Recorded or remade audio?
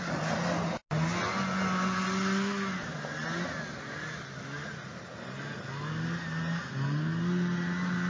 recorded